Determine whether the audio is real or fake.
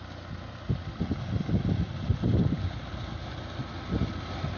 real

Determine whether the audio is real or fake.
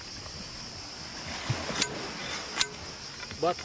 real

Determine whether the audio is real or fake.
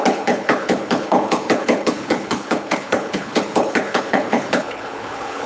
fake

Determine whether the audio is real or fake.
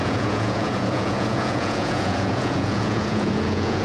fake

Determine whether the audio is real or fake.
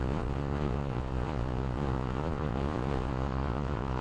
fake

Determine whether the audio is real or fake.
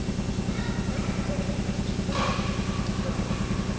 real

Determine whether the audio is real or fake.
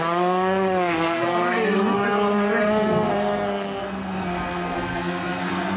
fake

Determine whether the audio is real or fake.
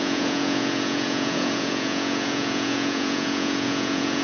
fake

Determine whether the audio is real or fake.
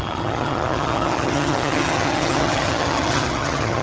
fake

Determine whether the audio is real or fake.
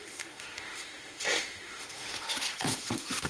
fake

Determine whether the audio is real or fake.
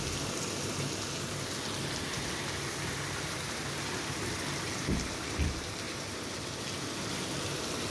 real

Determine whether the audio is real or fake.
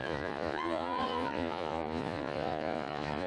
fake